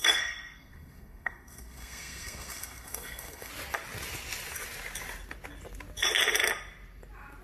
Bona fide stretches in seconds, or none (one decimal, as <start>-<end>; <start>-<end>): 3.5-7.4